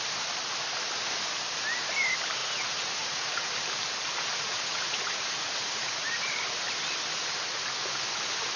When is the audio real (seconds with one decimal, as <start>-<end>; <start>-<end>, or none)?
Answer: 0.0-2.4; 3.5-4.3; 6.1-8.6